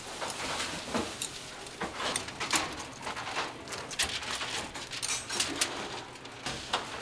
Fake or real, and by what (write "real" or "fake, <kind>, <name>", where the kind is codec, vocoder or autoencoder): real